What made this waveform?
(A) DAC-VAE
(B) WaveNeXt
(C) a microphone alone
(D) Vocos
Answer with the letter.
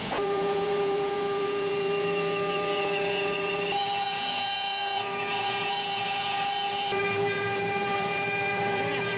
D